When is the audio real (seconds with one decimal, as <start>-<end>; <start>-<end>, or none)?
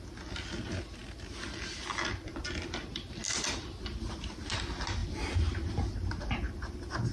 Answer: 0.0-7.1